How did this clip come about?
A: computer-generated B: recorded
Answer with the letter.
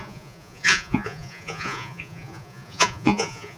A